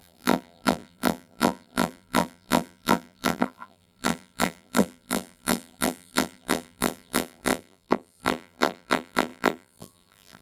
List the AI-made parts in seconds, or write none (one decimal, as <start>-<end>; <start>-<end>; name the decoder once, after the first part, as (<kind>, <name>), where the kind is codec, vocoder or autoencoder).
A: 0.0-10.4 (vocoder, BigVGAN v2)